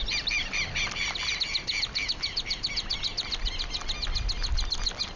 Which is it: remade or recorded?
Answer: recorded